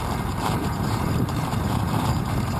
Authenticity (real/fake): fake